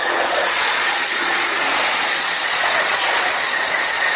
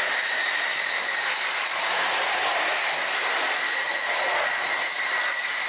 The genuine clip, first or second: second